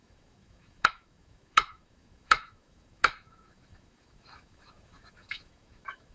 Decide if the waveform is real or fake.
fake